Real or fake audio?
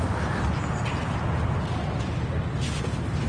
real